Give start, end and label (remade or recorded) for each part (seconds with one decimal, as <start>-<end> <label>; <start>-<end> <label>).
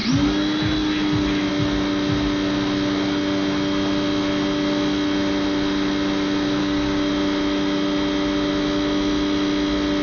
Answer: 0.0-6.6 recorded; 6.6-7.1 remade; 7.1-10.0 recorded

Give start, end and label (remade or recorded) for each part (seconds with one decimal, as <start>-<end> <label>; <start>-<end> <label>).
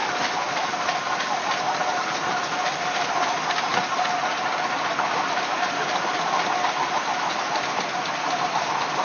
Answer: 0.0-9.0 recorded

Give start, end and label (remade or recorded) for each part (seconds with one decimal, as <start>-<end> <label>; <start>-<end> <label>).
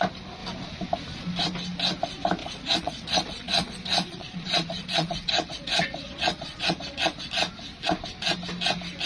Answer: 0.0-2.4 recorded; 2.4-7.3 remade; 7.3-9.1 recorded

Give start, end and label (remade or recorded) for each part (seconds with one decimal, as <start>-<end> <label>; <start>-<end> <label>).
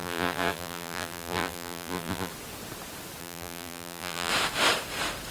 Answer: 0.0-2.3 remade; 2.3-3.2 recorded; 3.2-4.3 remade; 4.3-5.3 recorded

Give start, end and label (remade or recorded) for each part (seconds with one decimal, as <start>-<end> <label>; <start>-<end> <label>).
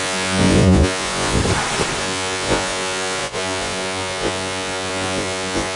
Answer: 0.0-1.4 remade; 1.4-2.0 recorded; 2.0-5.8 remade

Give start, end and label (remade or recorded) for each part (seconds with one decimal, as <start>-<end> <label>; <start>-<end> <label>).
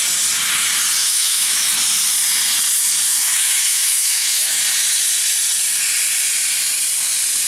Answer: 0.0-1.0 recorded; 1.0-1.7 remade; 1.7-3.1 recorded; 3.1-4.6 remade; 4.6-7.5 recorded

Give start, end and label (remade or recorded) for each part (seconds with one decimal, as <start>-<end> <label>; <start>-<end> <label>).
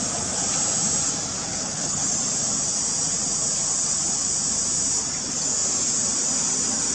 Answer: 0.0-1.5 recorded; 1.5-2.1 remade; 2.1-6.9 recorded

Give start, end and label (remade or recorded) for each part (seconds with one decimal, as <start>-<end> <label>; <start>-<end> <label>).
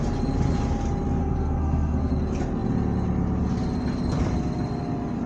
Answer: 0.0-1.2 recorded; 1.2-2.1 remade; 2.1-5.3 recorded